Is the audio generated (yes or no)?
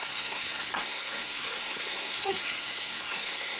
yes